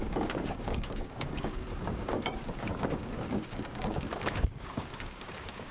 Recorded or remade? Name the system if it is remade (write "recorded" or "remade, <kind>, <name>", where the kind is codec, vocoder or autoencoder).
remade, codec, DAC